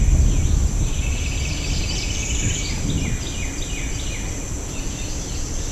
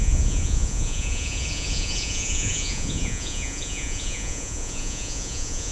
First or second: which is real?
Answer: first